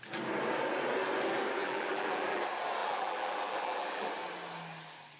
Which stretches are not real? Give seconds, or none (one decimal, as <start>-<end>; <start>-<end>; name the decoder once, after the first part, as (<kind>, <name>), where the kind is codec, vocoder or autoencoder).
1.6-2.4 (vocoder, BigVGAN v2); 2.8-4.1